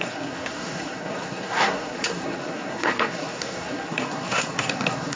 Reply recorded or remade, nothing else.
remade